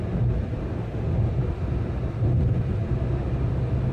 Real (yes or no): yes